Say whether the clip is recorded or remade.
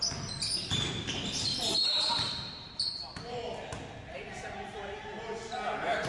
recorded